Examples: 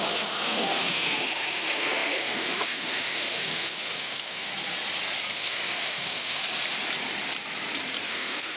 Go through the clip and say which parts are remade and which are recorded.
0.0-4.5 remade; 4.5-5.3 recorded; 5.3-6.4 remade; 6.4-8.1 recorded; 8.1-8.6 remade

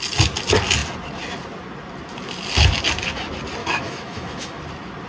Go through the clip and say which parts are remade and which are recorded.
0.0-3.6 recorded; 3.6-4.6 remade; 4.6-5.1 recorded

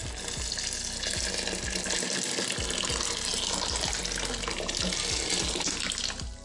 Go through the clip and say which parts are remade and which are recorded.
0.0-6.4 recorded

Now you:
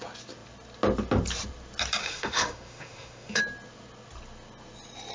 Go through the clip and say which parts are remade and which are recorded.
0.0-2.0 recorded; 2.0-3.4 remade; 3.4-5.1 recorded

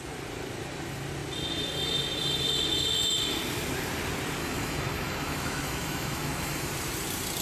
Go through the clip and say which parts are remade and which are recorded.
0.0-4.4 recorded; 4.4-6.7 remade; 6.7-7.4 recorded

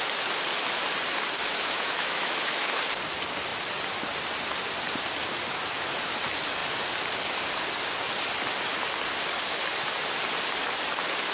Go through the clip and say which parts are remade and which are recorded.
0.0-1.4 recorded; 1.4-2.8 remade; 2.8-11.3 recorded

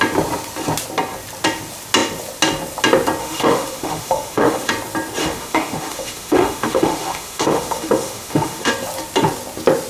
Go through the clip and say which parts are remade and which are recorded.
0.0-3.2 recorded; 3.2-4.7 remade; 4.7-5.2 recorded; 5.2-8.7 remade; 8.7-9.9 recorded

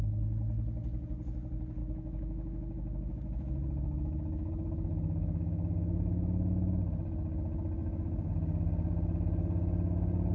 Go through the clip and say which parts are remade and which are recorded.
0.0-1.8 recorded; 1.8-6.8 remade; 6.8-7.8 recorded; 7.8-8.3 remade; 8.3-10.3 recorded